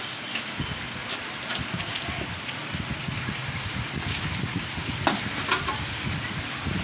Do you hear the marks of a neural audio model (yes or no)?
no